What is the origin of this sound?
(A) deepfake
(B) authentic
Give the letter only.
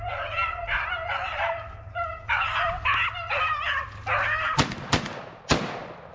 B